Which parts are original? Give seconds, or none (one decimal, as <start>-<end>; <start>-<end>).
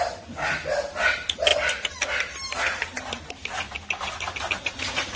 0.0-5.2